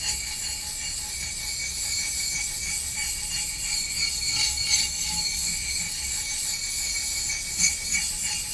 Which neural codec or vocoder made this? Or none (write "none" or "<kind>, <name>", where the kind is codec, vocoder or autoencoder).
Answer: none